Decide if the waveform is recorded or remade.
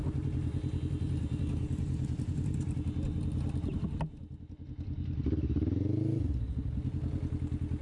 recorded